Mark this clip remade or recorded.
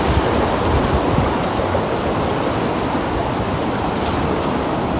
recorded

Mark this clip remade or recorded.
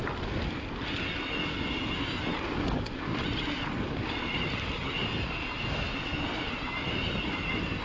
recorded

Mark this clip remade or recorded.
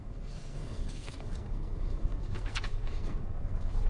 remade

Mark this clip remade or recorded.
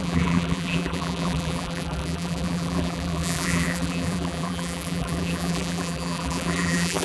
remade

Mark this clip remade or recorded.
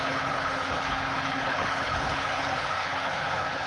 remade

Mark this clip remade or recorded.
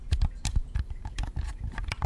recorded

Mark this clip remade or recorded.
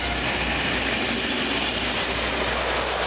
recorded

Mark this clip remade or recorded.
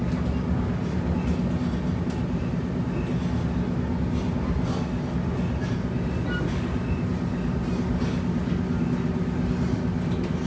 recorded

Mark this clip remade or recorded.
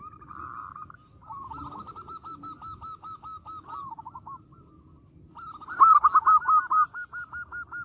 recorded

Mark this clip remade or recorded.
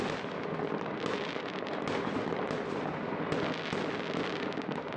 recorded